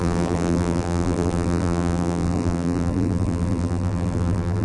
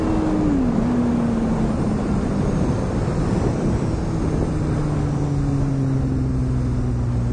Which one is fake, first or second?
first